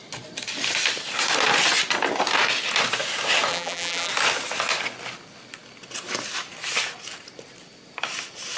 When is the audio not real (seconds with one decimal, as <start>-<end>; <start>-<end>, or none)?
3.5-4.1